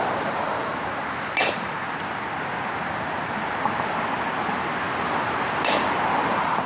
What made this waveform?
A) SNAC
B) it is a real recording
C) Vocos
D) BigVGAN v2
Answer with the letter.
B